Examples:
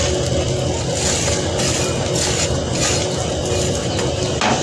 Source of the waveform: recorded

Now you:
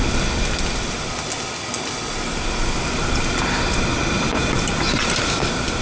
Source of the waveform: recorded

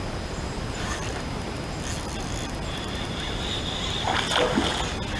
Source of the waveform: recorded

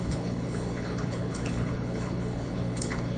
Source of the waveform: remade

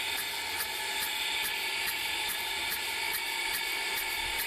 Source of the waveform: remade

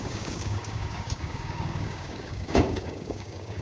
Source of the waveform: remade